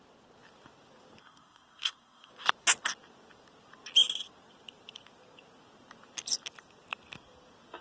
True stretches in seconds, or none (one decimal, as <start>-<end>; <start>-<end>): 0.0-1.2; 2.3-7.8